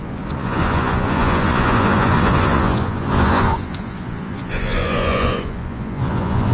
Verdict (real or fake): fake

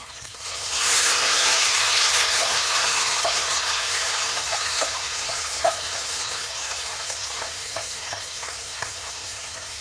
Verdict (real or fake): fake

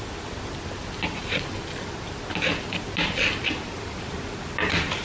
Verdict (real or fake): real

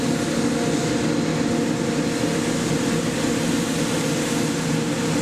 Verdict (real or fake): real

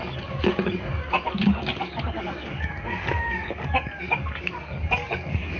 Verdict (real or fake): fake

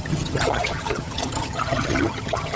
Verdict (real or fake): fake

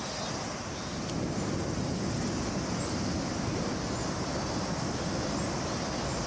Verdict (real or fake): real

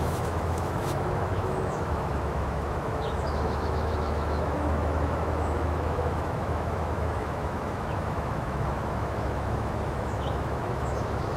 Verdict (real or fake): fake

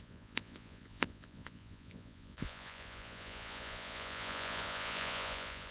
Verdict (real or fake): fake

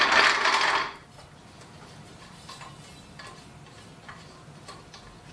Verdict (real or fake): real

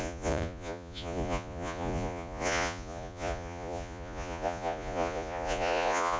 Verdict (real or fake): fake